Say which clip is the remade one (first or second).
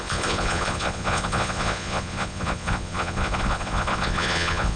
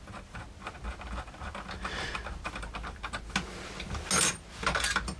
first